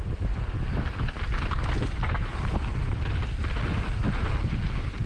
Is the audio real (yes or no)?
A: yes